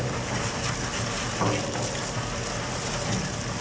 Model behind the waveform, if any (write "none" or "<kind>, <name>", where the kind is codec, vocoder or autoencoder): none